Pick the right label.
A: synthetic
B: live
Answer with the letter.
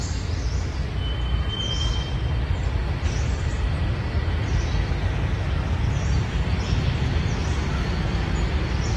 B